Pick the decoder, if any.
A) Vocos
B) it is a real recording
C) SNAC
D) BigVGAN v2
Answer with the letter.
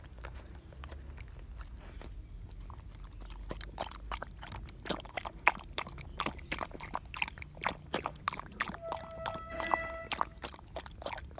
B